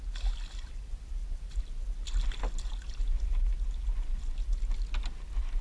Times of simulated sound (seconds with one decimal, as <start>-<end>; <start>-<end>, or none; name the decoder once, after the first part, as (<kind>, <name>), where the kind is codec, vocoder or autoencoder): none